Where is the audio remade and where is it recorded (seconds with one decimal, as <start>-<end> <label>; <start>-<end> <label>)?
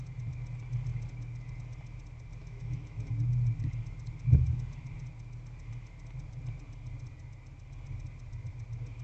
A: 0.0-2.4 recorded; 2.4-3.1 remade; 3.1-9.0 recorded